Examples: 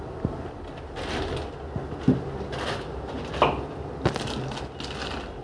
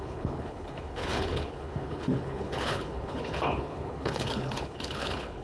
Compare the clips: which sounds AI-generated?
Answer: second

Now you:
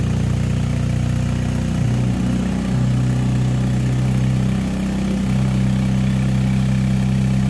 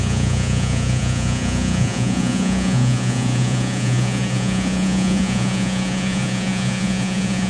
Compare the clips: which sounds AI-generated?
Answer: second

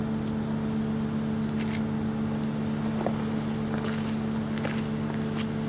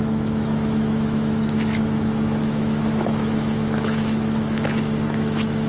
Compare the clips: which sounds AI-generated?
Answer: second